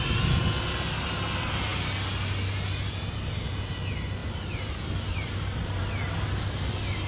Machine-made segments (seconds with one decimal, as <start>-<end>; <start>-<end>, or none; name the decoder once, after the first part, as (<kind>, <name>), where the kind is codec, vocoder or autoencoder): 1.7-2.8 (vocoder, BigVGAN v2); 4.2-5.8